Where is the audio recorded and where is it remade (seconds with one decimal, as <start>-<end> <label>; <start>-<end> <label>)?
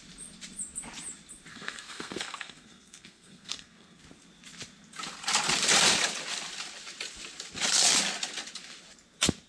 0.0-1.5 recorded; 1.5-4.0 remade; 4.0-9.5 recorded